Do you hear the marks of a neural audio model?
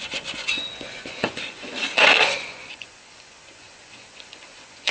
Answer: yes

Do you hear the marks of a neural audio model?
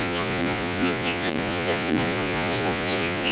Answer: yes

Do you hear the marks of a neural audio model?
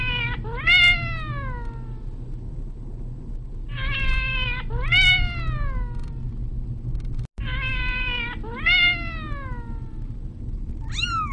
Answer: no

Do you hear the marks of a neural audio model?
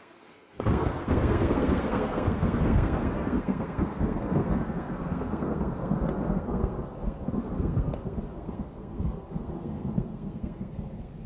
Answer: yes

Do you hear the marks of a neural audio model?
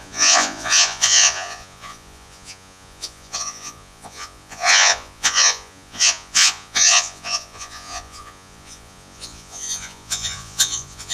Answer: yes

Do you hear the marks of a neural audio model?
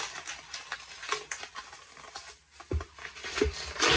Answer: no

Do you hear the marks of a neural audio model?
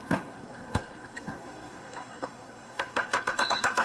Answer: yes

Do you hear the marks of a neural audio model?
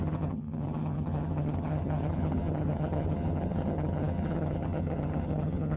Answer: yes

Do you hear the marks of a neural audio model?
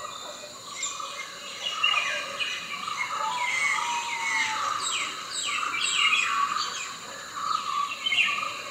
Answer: no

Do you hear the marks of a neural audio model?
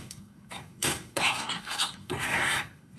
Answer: yes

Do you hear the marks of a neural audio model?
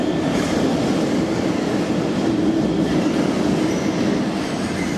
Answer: no